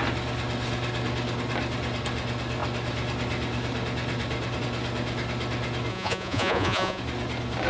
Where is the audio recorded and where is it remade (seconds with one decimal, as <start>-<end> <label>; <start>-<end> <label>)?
0.0-5.9 recorded; 5.9-7.0 remade; 7.0-7.7 recorded